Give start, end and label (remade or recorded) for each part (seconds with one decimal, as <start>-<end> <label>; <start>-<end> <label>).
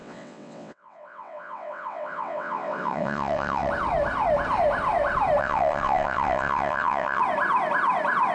0.0-3.7 remade; 3.7-5.4 recorded; 5.4-7.2 remade; 7.2-8.3 recorded